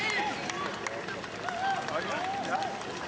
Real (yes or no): yes